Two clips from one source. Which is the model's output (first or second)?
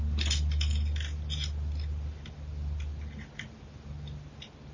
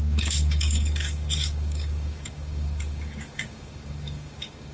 second